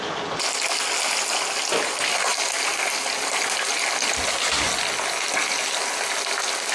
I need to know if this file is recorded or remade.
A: recorded